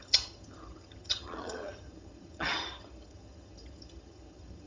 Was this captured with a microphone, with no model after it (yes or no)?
no